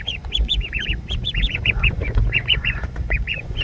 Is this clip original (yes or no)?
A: no